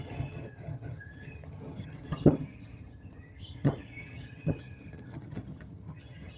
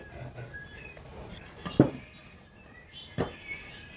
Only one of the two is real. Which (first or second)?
second